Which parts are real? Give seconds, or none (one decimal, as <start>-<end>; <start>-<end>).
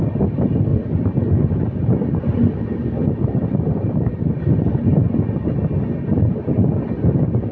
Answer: 0.7-1.5; 4.9-7.5